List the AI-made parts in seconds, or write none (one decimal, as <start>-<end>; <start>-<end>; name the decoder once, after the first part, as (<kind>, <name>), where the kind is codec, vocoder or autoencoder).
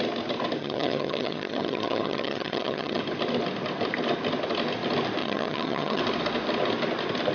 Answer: 0.6-3.0 (vocoder, HiFi-GAN); 5.2-6.0